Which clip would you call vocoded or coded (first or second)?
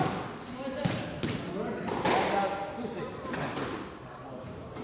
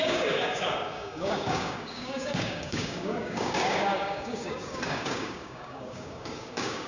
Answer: second